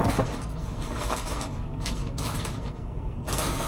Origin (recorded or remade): remade